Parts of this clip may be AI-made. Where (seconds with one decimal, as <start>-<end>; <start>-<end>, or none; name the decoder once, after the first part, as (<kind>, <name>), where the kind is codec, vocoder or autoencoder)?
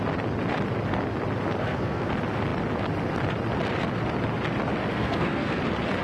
1.6-2.1 (codec, SNAC); 4.9-5.6